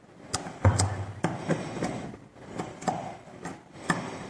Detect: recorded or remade recorded